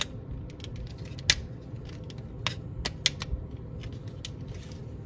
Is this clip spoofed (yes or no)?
no